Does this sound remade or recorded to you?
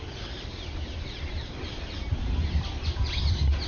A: recorded